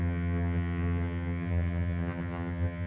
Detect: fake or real fake